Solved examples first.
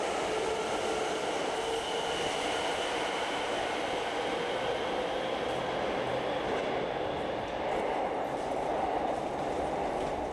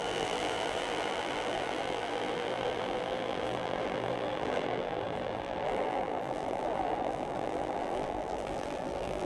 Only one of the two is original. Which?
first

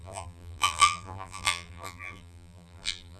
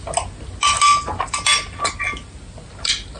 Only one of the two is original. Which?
second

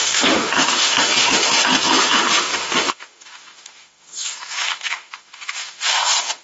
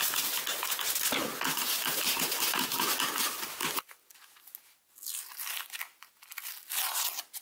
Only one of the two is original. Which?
second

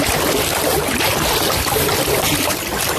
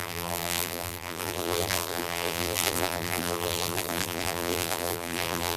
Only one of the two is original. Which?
first